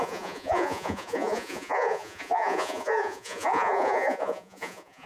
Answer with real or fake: fake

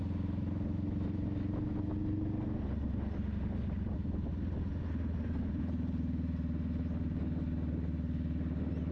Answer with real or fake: real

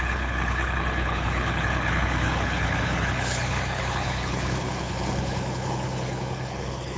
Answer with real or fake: fake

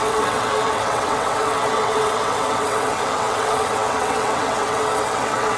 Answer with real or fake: fake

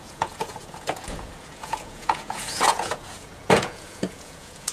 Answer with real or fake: fake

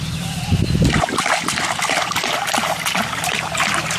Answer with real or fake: real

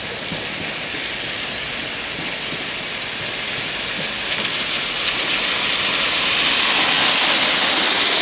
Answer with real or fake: real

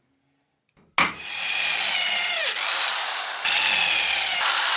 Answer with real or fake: real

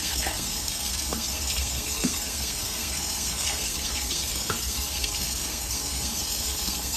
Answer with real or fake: fake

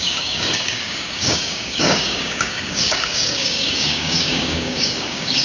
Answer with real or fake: fake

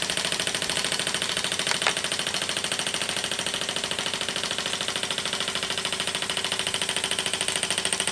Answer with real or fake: real